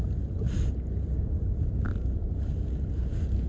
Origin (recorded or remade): recorded